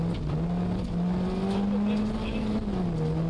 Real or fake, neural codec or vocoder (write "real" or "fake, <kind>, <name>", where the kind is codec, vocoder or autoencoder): real